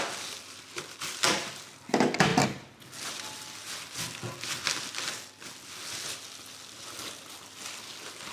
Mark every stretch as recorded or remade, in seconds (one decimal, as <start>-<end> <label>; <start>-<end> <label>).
0.0-8.3 recorded